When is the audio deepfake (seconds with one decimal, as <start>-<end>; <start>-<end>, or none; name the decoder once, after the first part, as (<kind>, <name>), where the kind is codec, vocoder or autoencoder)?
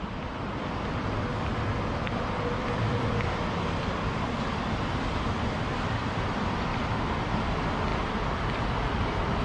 0.0-1.3 (vocoder, BigVGAN v2); 2.8-6.7; 7.5-9.4